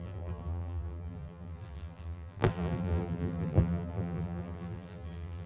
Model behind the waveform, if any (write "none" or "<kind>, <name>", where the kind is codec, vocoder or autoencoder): vocoder, BigVGAN v2